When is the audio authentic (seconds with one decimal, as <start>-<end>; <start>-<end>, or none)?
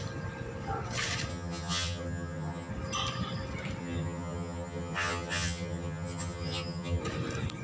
0.0-1.3; 2.7-3.8; 7.0-7.6